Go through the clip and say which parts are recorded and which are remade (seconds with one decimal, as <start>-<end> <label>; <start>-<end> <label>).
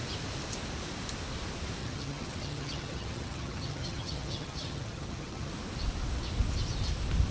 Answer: 0.0-1.8 recorded; 1.8-5.5 remade; 5.5-7.3 recorded